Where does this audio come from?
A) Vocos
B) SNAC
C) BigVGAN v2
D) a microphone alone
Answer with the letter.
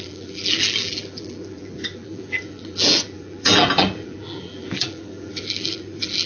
C